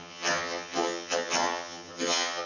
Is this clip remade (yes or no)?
yes